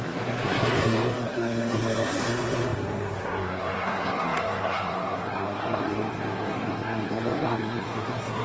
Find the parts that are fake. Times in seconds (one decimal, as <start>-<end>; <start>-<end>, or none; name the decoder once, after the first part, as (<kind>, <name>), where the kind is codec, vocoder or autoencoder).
0.0-8.4 (codec, SNAC)